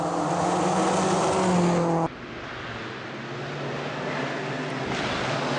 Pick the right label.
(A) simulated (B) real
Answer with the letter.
B